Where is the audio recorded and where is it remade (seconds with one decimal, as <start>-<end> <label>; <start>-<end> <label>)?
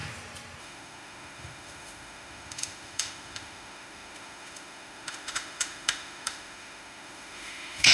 0.0-0.6 recorded; 0.6-7.9 remade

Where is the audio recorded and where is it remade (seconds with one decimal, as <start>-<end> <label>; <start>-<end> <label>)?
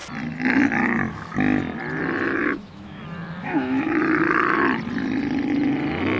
0.0-2.4 recorded; 2.4-3.0 remade; 3.0-3.4 recorded; 3.4-4.0 remade; 4.0-6.2 recorded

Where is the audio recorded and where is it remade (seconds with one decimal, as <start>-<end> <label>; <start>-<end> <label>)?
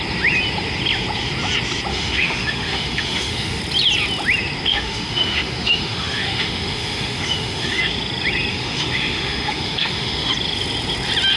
0.0-1.9 recorded; 1.9-3.6 remade; 3.6-4.7 recorded; 4.7-7.8 remade; 7.8-8.5 recorded; 8.5-10.3 remade; 10.3-11.4 recorded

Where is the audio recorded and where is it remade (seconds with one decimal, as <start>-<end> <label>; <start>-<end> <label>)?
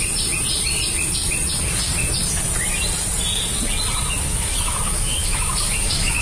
0.0-4.3 recorded; 4.3-6.2 remade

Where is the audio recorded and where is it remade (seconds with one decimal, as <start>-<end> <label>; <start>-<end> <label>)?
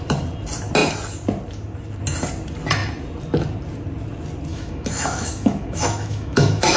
0.0-4.5 recorded; 4.5-6.8 remade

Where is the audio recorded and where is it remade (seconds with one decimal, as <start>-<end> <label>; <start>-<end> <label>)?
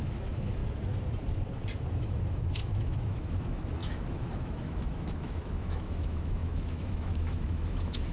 0.0-0.6 remade; 0.6-1.9 recorded; 1.9-8.1 remade